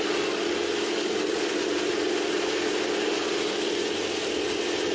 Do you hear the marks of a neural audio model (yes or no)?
no